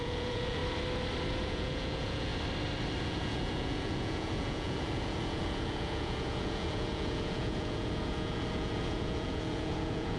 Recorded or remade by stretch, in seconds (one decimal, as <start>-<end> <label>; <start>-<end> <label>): 0.0-0.6 remade; 0.6-1.4 recorded; 1.4-2.3 remade; 2.3-3.0 recorded; 3.0-10.2 remade

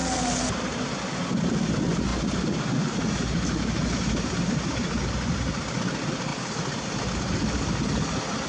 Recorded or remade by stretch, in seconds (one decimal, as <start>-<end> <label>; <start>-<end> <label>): 0.0-8.5 recorded

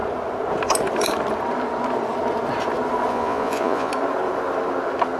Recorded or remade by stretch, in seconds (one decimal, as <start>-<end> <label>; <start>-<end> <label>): 0.0-3.1 recorded; 3.1-3.9 remade; 3.9-5.2 recorded

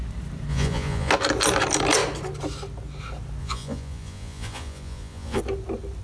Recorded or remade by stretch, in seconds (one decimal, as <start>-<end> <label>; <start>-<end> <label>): 0.0-0.5 recorded; 0.5-1.1 remade; 1.1-3.4 recorded; 3.4-5.4 remade; 5.4-6.0 recorded

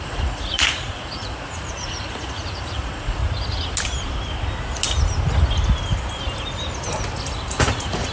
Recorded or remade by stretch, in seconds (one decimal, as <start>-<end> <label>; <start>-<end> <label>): 0.0-3.2 remade; 3.2-7.5 recorded; 7.5-8.1 remade

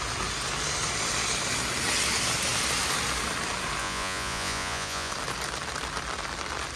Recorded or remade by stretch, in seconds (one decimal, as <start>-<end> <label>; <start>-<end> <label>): 0.0-3.8 recorded; 3.8-5.1 remade; 5.1-6.8 recorded